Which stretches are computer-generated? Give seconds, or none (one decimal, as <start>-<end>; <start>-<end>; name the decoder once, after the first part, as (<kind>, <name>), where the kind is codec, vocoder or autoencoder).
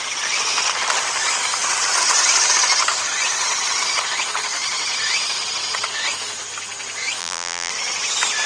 7.2-7.7 (vocoder, BigVGAN v2)